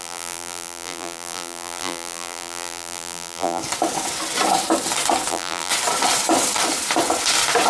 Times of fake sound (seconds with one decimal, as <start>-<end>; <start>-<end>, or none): 0.0-3.6; 5.3-5.7